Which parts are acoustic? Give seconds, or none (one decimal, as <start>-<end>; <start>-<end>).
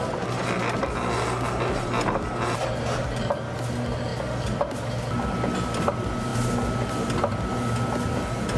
0.0-8.6